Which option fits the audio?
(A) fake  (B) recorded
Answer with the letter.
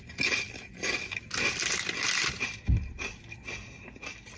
B